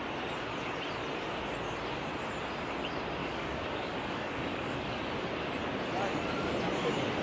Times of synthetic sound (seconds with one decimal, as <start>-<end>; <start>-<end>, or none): 3.2-5.0